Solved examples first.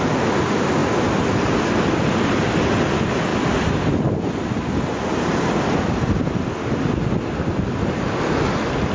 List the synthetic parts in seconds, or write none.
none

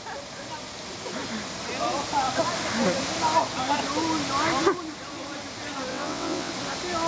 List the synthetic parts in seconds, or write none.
5.9-6.5 (vocoder, WaveNeXt)

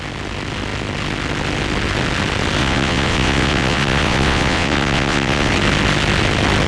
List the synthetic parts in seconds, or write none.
2.6-5.5 (vocoder, WaveNeXt)

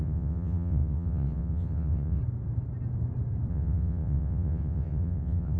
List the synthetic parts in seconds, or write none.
0.0-2.2 (vocoder, WaveNeXt); 3.5-5.6

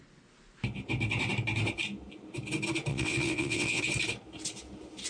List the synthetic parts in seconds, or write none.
2.9-3.8 (vocoder, WaveNeXt)

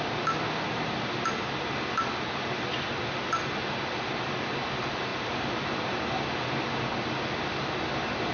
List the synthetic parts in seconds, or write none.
none

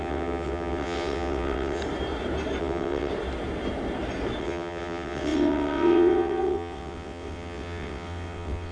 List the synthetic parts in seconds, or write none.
0.0-1.8 (vocoder, WaveNeXt); 2.6-3.1; 4.4-8.7

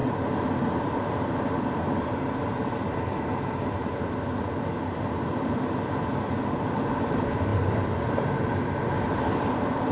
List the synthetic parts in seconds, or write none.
none